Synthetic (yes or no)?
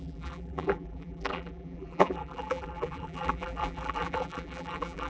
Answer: yes